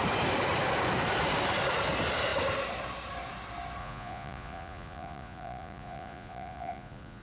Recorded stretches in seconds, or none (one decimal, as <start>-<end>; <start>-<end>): 0.0-3.8